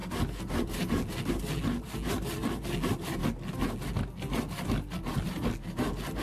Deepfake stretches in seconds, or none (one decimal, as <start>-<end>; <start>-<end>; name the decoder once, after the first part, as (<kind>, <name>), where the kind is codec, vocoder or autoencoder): none